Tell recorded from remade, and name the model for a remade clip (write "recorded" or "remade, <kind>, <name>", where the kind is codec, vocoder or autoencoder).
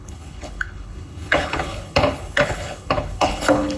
remade, codec, HILCodec